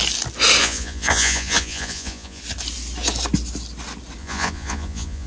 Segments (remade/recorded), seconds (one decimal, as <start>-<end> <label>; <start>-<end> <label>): 0.0-0.6 recorded; 0.6-2.4 remade; 2.4-4.2 recorded; 4.2-5.3 remade